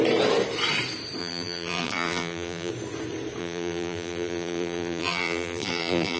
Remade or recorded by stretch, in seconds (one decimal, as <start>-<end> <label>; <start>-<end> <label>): 0.0-1.2 recorded; 1.2-2.7 remade; 2.7-3.4 recorded; 3.4-6.2 remade